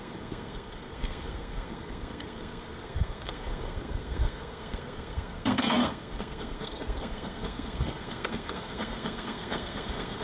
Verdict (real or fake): fake